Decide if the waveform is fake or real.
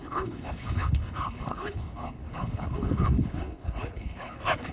fake